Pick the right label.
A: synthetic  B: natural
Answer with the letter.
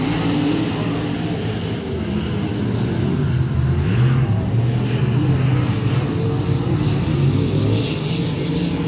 B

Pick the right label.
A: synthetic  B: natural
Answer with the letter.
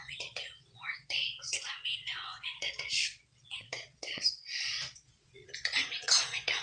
A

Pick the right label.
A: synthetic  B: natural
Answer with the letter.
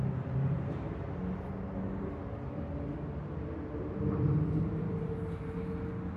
B